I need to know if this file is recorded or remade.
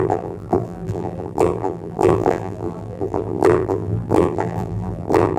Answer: remade